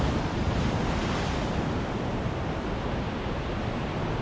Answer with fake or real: real